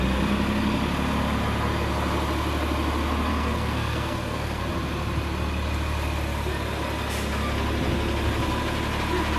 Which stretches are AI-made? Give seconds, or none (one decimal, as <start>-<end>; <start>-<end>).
3.3-4.6